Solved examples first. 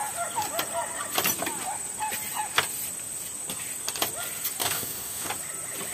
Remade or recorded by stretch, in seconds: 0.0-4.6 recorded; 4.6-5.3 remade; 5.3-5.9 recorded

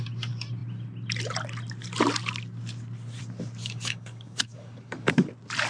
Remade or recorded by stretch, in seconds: 0.0-3.6 recorded; 3.6-5.3 remade; 5.3-5.7 recorded

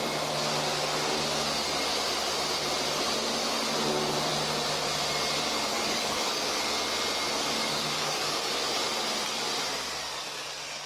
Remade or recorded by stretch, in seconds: 0.0-5.7 recorded; 5.7-6.6 remade; 6.6-7.6 recorded; 7.6-8.5 remade; 8.5-10.9 recorded

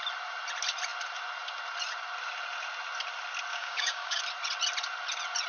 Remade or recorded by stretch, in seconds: 0.0-3.5 recorded; 3.5-4.2 remade; 4.2-5.5 recorded

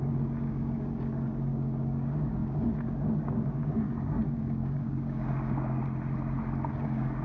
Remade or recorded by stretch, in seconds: 0.0-5.8 remade; 5.8-6.7 recorded; 6.7-7.2 remade

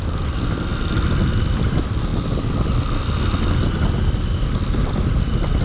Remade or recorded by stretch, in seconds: 0.0-5.6 recorded